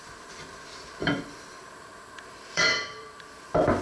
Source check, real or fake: fake